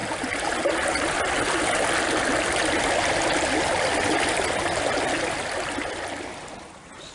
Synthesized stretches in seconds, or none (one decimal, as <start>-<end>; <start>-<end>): none